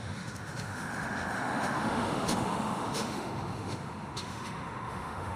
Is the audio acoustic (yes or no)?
no